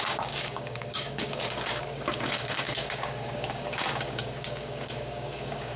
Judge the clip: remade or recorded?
remade